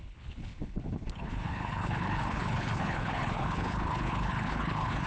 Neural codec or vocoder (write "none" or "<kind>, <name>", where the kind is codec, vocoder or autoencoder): codec, HILCodec